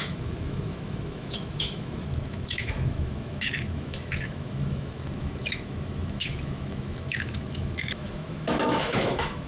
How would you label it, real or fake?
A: fake